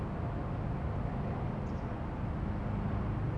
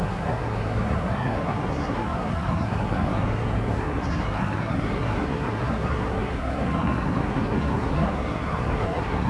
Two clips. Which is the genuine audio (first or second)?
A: first